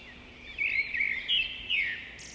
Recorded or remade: recorded